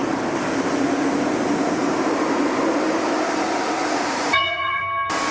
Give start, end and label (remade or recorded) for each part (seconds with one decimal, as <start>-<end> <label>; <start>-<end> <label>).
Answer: 0.0-3.8 recorded; 3.8-4.8 remade; 4.8-5.3 recorded